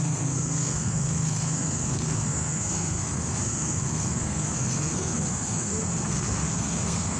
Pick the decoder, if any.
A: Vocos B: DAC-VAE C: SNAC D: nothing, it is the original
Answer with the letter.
C